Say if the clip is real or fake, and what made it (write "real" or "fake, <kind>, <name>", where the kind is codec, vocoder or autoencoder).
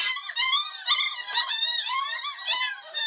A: real